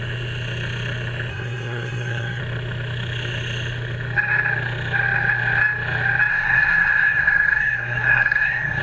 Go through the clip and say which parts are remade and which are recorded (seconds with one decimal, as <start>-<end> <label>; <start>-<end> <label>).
0.0-1.3 recorded; 1.3-2.4 remade; 2.4-6.3 recorded; 6.3-8.8 remade